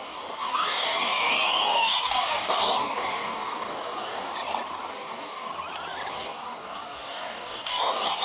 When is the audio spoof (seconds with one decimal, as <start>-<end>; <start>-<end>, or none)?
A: 0.0-4.3; 4.9-5.5; 6.1-8.2